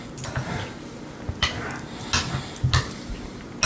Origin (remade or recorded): recorded